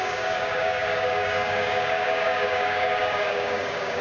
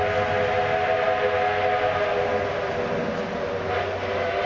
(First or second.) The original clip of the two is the second